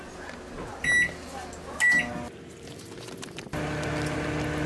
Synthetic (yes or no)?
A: no